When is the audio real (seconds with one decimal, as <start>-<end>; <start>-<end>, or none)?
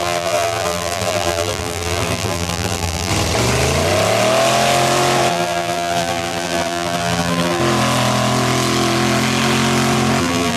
3.1-5.3; 7.6-10.2